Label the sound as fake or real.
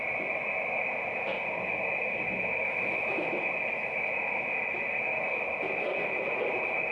real